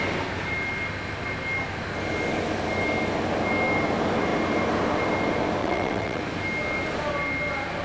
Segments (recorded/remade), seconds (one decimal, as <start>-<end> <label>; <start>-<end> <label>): 0.0-5.6 recorded; 5.6-6.2 remade; 6.2-7.8 recorded